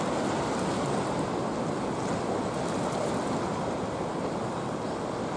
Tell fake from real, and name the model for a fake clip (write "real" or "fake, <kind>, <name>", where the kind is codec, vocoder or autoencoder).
real